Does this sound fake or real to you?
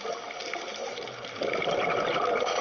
real